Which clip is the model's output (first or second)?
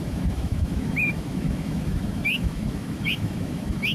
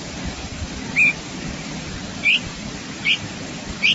first